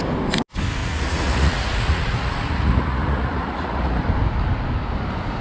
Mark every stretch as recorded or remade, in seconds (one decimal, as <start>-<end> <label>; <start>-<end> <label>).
0.0-0.8 recorded; 0.8-4.0 remade; 4.0-5.4 recorded